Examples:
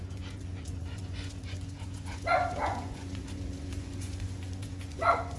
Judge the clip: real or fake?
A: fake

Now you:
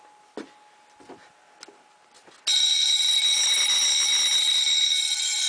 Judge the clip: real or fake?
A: real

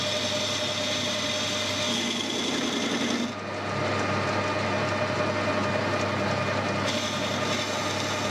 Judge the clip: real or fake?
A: real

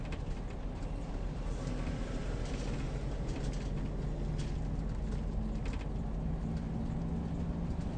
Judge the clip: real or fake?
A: real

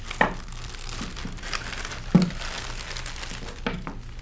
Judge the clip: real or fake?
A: real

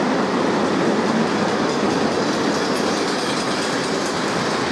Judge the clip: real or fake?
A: real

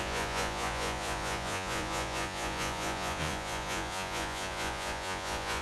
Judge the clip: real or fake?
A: fake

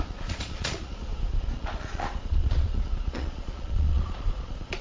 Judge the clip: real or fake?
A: fake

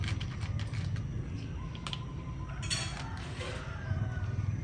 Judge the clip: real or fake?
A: real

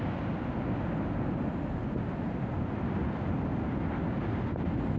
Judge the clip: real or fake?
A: real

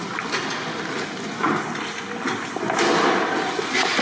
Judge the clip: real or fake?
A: real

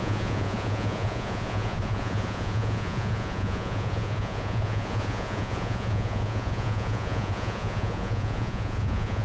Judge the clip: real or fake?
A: fake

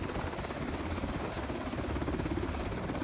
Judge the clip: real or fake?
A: real